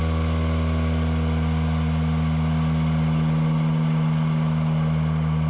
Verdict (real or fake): real